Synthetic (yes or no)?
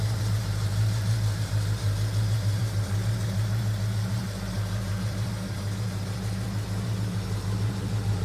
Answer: yes